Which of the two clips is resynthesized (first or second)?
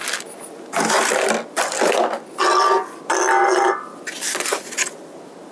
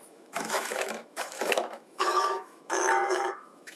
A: second